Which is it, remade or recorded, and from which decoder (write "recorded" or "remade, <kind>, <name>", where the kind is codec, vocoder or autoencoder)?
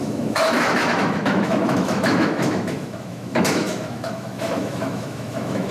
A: remade, autoencoder, DAC-VAE